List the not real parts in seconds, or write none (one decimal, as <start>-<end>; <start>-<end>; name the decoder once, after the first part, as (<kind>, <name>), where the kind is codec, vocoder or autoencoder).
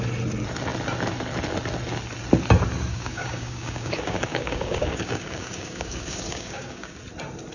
2.9-7.0 (codec, DAC)